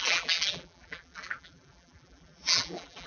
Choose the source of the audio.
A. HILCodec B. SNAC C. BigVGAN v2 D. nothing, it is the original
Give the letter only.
C